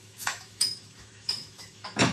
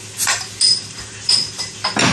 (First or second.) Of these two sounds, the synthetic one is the first